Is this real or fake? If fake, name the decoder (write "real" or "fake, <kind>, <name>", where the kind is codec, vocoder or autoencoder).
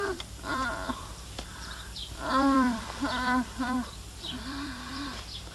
fake, vocoder, BigVGAN v2